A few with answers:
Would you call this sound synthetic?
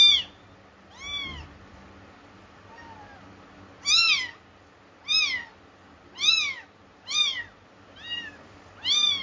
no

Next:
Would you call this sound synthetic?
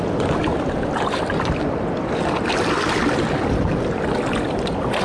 no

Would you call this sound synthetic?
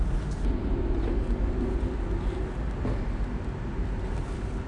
no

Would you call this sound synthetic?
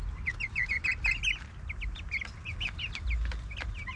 no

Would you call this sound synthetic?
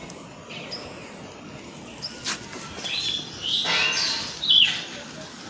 no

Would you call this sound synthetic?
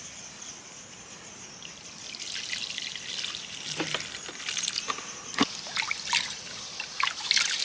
no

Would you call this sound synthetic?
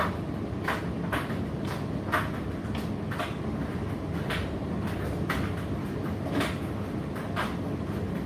no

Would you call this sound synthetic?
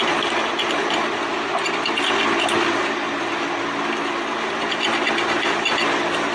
no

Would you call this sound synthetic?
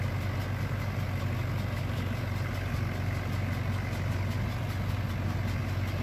no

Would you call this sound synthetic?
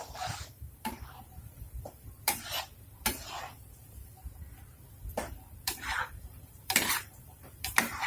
yes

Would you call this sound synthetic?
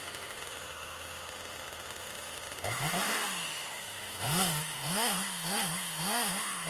yes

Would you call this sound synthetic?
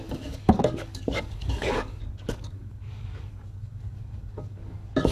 yes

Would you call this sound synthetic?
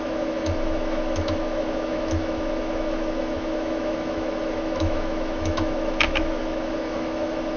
yes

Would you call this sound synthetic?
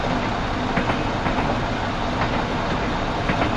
no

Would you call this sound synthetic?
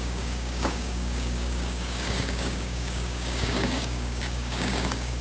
yes